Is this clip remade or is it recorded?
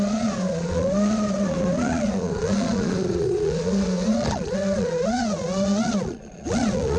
remade